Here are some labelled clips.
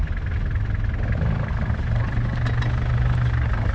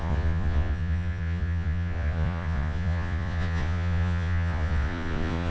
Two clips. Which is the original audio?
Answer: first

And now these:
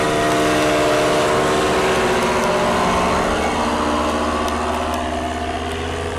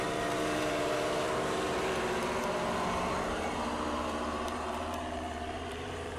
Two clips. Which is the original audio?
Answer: first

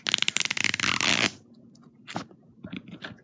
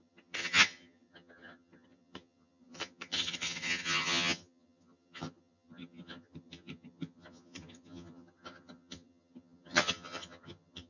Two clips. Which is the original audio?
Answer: first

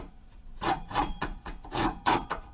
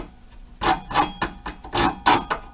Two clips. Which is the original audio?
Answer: second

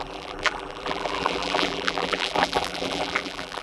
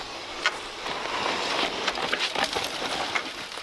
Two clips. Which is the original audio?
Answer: second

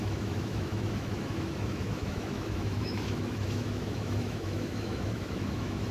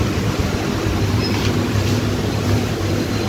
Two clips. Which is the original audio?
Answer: second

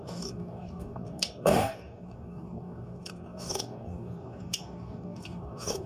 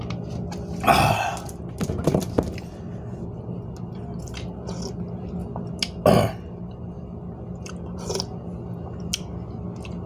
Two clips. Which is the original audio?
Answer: second